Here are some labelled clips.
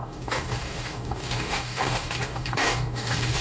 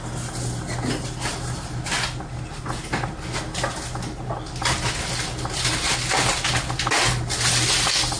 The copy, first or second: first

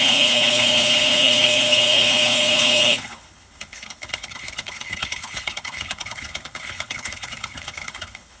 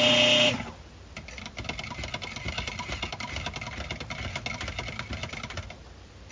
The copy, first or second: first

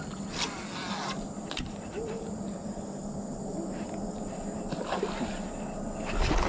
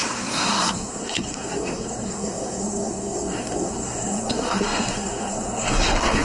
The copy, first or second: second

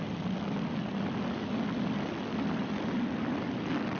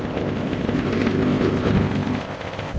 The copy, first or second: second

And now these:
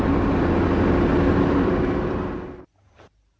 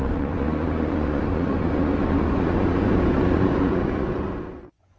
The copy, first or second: second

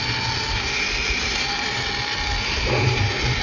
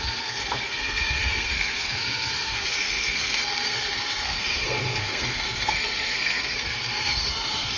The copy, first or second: second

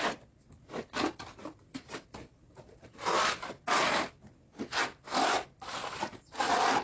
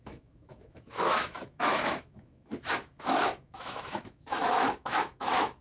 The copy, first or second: second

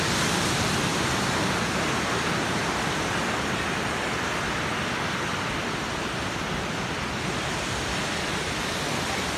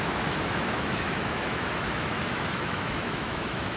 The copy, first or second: second